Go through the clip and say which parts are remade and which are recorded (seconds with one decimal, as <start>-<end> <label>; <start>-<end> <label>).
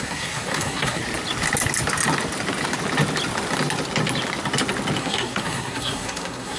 0.0-1.0 remade; 1.0-5.0 recorded; 5.0-6.6 remade